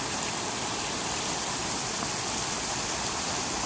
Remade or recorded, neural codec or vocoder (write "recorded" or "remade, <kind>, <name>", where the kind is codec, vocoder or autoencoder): recorded